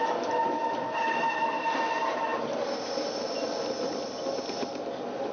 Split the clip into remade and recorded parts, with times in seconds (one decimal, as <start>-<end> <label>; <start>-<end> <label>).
0.0-5.3 recorded